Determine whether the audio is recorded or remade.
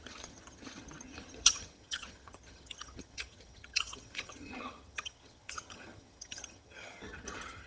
remade